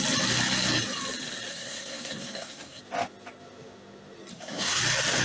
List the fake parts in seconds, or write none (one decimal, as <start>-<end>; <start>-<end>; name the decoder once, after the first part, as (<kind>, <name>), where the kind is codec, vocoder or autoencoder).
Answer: 1.5-2.8 (codec, SNAC); 4.3-4.8